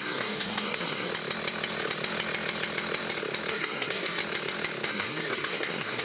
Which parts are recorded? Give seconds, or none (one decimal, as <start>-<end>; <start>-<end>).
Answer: 1.1-3.5; 4.2-4.9